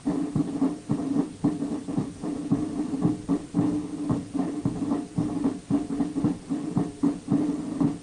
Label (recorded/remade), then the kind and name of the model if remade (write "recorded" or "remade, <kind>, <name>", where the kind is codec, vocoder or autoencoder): recorded